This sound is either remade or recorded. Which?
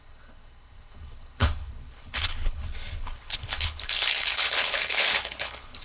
remade